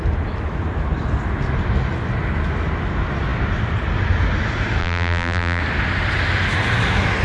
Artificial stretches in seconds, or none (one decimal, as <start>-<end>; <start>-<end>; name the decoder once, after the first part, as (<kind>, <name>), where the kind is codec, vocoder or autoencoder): 4.8-5.6 (vocoder, BigVGAN v2)